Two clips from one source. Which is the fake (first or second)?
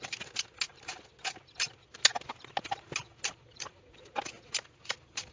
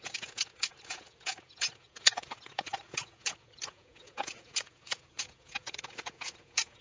second